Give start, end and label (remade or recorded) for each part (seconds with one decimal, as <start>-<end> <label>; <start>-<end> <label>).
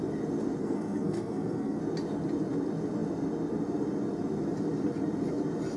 0.0-0.6 recorded; 0.6-1.8 remade; 1.8-5.8 recorded